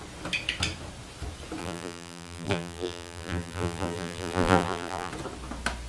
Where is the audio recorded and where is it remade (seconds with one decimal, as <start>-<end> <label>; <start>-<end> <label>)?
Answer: 0.0-1.6 recorded; 1.6-5.1 remade; 5.1-5.9 recorded